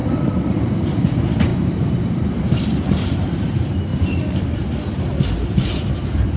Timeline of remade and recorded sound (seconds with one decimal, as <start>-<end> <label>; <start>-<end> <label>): 0.0-0.6 recorded; 0.6-3.9 remade; 3.9-5.2 recorded; 5.2-6.4 remade